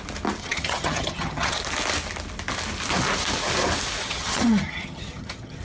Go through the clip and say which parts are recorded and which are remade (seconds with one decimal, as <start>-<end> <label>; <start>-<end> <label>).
0.0-0.4 recorded; 0.4-1.6 remade; 1.6-4.0 recorded; 4.0-5.6 remade